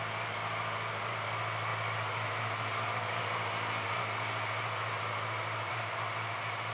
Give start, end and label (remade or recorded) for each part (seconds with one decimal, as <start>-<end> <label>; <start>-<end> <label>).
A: 0.0-1.7 remade; 1.7-5.7 recorded; 5.7-6.7 remade